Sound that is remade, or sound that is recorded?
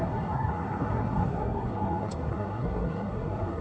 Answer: remade